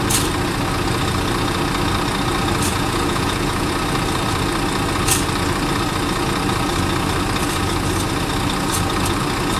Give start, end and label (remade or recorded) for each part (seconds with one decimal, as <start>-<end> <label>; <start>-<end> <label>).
0.0-2.7 recorded; 2.7-3.7 remade; 3.7-9.6 recorded